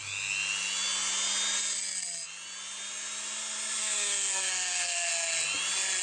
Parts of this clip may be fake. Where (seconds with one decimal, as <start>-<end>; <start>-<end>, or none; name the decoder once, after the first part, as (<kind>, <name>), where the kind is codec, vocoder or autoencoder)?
3.8-5.1 (codec, SNAC)

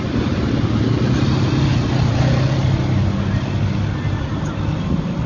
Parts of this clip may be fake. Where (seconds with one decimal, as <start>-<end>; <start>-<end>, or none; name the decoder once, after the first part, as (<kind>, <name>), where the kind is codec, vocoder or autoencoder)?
none

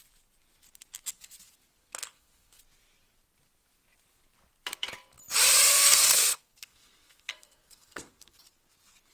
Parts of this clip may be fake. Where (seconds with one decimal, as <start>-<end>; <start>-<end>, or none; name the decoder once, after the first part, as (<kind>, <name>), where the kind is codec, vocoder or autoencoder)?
1.8-2.6 (codec, SNAC); 5.7-8.4

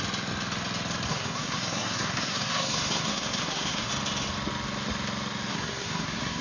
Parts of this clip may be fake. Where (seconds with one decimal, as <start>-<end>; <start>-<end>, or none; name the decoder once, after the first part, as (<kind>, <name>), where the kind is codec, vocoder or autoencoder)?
1.1-3.9 (codec, SNAC); 5.5-6.4